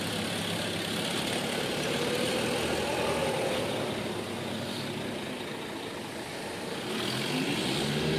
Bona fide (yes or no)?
yes